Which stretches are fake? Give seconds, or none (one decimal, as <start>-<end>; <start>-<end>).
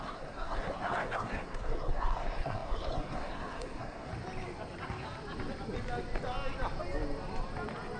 0.0-4.1